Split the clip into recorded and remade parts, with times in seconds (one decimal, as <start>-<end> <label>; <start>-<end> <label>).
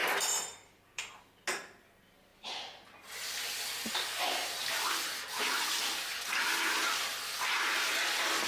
0.0-1.0 remade; 1.0-8.5 recorded